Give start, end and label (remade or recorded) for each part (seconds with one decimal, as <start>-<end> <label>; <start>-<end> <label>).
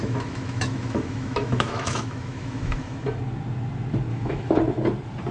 0.0-3.2 remade; 3.2-4.1 recorded; 4.1-4.6 remade; 4.6-5.3 recorded